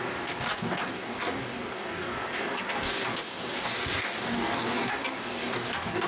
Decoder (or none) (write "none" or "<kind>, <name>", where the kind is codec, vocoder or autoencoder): codec, DAC